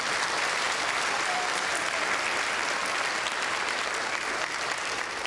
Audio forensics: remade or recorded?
remade